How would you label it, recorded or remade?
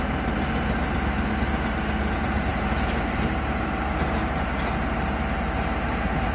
recorded